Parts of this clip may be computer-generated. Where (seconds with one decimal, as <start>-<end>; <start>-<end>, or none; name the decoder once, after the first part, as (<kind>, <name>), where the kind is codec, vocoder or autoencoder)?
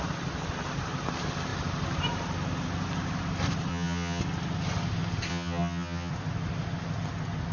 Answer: 3.7-4.2 (vocoder, HiFi-GAN); 5.3-6.1